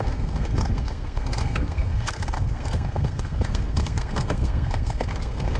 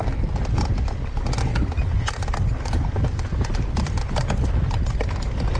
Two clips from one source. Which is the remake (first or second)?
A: first